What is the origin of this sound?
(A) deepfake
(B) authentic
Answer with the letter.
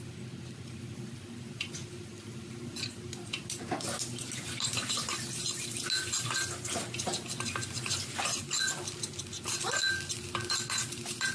B